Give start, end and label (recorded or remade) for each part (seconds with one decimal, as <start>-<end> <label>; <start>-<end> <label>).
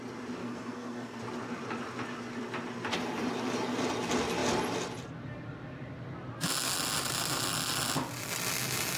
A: 0.0-0.4 recorded; 0.4-1.2 remade; 1.2-9.0 recorded